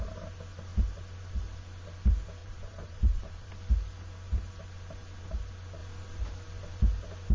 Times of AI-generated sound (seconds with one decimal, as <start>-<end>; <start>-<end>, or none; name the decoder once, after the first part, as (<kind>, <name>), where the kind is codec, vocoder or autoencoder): 2.4-3.5 (vocoder, BigVGAN v2)